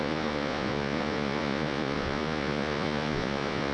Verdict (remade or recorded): remade